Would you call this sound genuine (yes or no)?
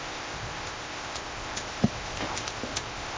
no